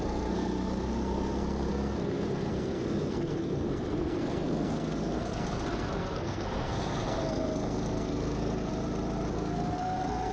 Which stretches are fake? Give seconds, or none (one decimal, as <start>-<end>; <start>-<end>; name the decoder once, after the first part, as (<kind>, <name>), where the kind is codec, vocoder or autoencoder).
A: 0.0-8.7 (codec, SNAC); 9.3-10.3